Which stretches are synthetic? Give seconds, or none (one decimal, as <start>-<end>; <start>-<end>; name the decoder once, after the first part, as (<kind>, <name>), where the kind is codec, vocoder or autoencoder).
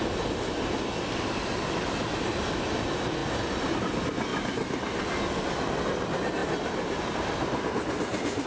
none